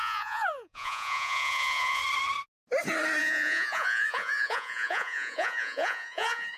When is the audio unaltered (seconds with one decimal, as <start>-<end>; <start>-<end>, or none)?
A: 2.0-3.2

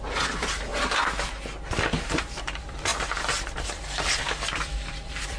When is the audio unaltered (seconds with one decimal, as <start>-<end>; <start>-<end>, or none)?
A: 0.7-2.1; 2.9-3.5

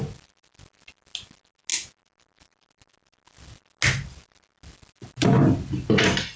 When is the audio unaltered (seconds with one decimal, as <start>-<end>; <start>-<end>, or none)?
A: 0.0-6.4

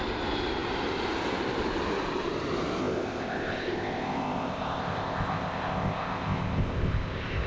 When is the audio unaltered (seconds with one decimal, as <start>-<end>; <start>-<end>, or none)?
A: 0.0-2.8